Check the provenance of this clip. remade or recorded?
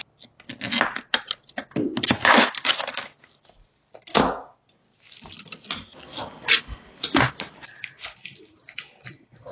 recorded